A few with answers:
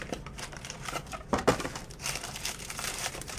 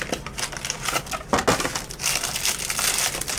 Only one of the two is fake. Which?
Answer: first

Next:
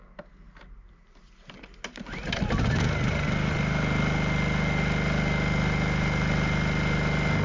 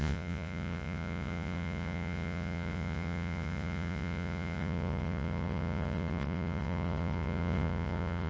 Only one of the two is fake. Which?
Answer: second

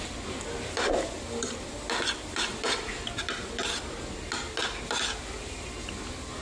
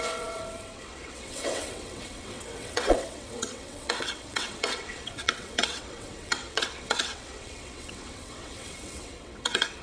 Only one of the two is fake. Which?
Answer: second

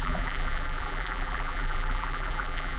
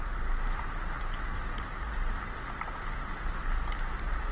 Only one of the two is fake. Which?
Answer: first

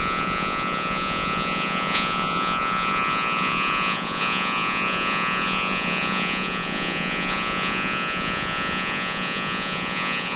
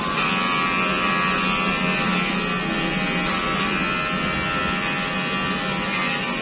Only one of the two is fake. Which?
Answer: first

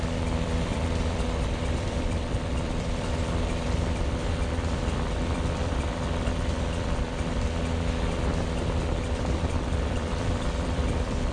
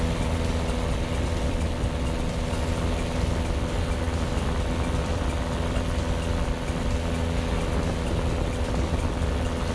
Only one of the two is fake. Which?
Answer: first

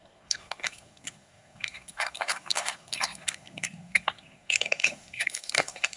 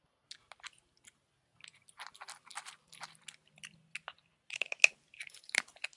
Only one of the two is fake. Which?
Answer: first